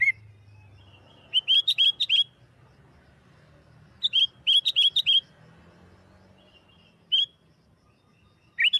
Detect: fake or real real